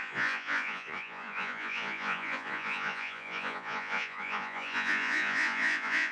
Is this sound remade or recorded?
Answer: remade